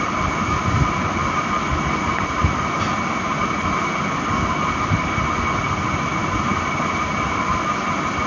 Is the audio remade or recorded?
recorded